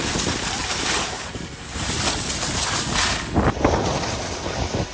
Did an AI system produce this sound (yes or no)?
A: no